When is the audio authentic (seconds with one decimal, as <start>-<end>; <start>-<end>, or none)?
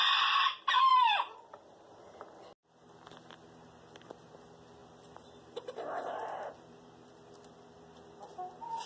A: 0.0-0.9; 2.2-8.9